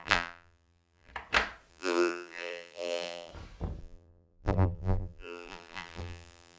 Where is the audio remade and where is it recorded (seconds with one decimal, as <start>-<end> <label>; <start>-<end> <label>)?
0.0-1.1 remade; 1.1-1.7 recorded; 1.7-3.3 remade; 3.3-3.8 recorded; 3.8-6.6 remade